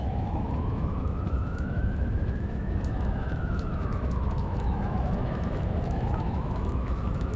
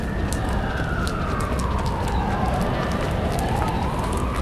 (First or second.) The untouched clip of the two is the second